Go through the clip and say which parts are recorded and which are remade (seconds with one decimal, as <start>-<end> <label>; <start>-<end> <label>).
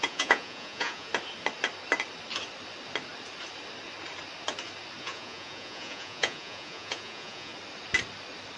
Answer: 0.0-1.1 remade; 1.1-5.0 recorded; 5.0-7.5 remade; 7.5-8.6 recorded